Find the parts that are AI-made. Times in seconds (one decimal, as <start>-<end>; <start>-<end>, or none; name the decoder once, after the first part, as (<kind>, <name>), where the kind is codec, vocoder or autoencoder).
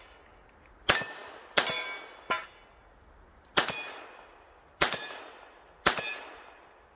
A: none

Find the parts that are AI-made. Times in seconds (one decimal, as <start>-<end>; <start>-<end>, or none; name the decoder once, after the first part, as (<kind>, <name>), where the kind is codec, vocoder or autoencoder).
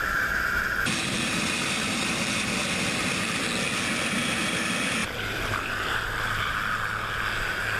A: 0.0-2.5 (vocoder, BigVGAN v2); 5.0-6.5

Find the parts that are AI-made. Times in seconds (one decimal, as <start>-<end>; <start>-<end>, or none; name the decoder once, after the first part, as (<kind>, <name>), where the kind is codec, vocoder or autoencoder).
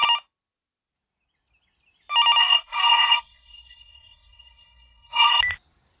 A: 2.4-5.4 (codec, SNAC)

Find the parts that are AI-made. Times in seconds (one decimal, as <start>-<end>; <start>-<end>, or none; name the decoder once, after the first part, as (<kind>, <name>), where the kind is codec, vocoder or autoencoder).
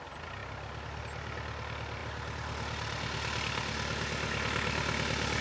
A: none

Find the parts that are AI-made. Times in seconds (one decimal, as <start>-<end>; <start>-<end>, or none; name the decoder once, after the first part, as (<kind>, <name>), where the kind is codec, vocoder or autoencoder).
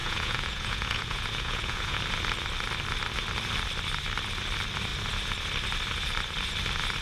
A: 0.0-2.0 (vocoder, Vocos)